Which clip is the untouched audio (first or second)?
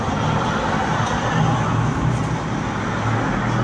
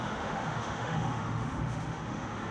first